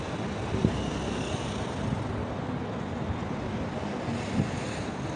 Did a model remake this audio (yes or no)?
no